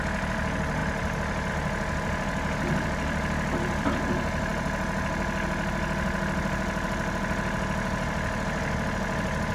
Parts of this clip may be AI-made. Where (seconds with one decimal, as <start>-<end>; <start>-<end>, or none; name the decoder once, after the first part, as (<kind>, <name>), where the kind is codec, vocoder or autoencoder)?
none